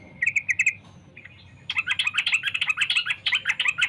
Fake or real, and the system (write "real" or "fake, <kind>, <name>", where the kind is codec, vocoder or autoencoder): real